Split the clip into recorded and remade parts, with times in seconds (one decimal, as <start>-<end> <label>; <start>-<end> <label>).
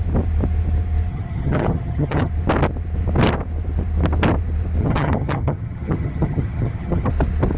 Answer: 0.0-1.1 recorded; 1.1-2.3 remade; 2.3-4.8 recorded; 4.8-7.1 remade; 7.1-7.6 recorded